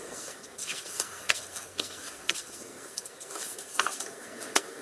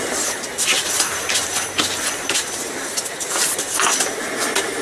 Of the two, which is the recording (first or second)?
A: second